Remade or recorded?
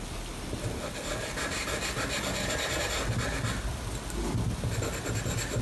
recorded